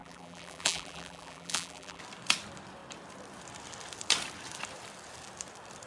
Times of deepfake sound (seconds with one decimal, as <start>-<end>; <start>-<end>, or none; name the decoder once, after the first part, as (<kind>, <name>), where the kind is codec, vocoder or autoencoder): 0.0-2.0 (vocoder, BigVGAN v2)